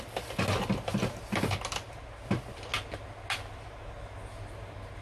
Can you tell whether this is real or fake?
real